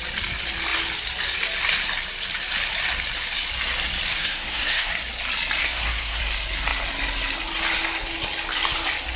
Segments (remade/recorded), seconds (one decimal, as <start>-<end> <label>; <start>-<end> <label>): 0.0-4.1 recorded; 4.1-4.9 remade; 4.9-5.6 recorded; 5.6-6.2 remade; 6.2-9.2 recorded